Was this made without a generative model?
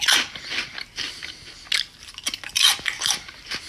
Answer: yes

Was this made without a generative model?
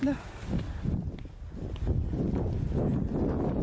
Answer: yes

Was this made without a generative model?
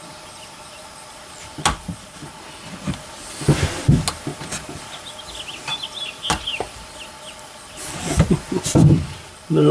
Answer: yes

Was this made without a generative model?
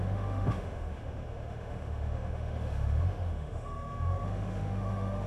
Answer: no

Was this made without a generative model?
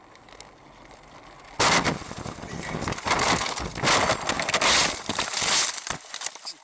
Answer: yes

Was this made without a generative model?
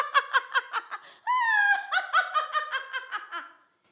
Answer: yes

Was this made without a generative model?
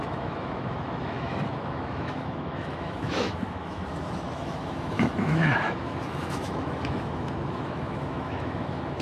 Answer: no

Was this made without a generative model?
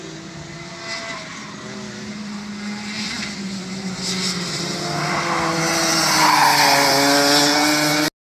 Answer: yes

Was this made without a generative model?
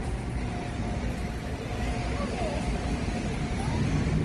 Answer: yes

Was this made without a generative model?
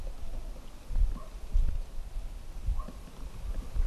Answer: yes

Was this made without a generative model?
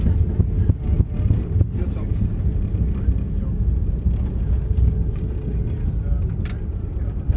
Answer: yes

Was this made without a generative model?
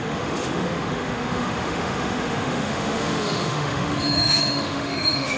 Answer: no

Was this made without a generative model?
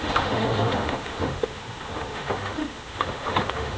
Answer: no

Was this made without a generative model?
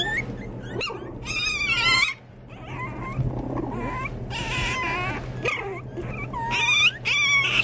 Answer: yes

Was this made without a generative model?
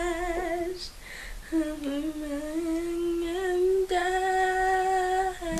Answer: yes